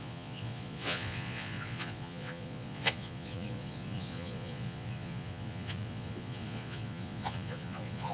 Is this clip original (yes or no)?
no